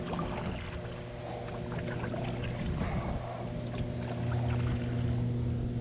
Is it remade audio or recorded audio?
recorded